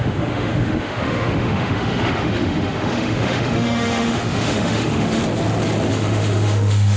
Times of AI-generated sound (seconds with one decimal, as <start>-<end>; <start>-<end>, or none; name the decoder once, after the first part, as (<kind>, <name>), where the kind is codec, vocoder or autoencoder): 0.0-5.2 (autoencoder, DAC-VAE); 5.9-7.0